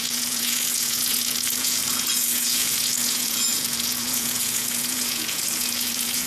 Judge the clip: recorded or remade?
remade